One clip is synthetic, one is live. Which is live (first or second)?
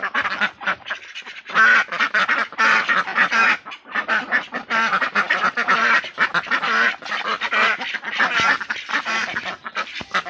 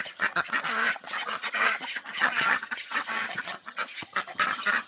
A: first